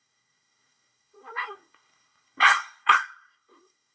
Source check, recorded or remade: remade